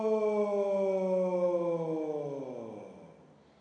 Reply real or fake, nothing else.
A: real